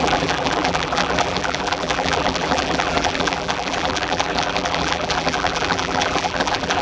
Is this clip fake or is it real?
fake